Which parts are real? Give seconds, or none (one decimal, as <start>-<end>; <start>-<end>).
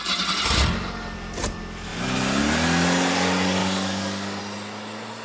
0.0-3.6; 4.4-5.2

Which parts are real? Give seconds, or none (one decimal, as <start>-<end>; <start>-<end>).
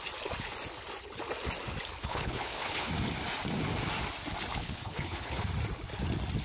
0.0-2.0; 2.9-4.6; 5.4-6.4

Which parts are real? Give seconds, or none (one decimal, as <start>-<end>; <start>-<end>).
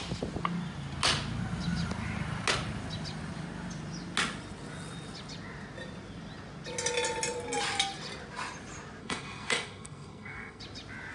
0.0-9.0; 10.6-11.1